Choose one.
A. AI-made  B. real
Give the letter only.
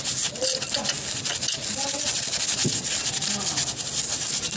B